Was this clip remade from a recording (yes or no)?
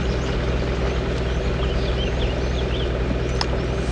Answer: no